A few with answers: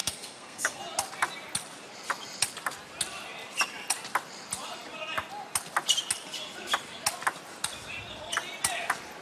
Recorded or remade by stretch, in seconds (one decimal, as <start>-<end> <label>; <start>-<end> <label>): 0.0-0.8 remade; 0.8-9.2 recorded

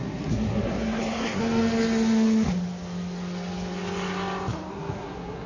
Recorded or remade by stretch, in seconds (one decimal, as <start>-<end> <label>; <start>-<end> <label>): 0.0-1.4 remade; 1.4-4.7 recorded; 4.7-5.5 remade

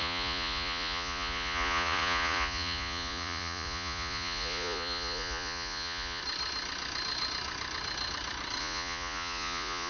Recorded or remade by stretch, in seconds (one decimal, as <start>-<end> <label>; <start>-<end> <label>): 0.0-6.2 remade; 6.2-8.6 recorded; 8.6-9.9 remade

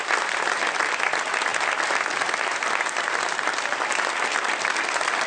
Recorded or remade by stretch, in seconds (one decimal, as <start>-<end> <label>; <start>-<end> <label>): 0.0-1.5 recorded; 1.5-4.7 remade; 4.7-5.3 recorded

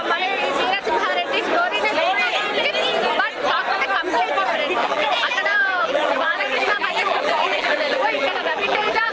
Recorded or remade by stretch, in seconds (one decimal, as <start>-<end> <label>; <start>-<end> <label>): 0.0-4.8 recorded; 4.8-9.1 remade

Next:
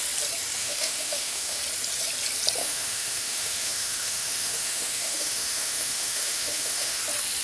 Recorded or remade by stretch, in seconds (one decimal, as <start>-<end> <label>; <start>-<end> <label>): 0.0-0.6 recorded; 0.6-1.6 remade; 1.6-2.6 recorded; 2.6-7.0 remade; 7.0-7.4 recorded

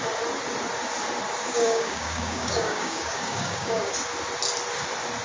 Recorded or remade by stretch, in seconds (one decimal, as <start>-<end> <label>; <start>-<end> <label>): 0.0-1.4 recorded; 1.4-3.9 remade; 3.9-5.2 recorded